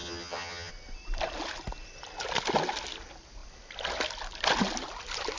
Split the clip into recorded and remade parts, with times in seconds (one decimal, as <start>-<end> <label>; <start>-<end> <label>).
0.0-0.7 remade; 0.7-5.4 recorded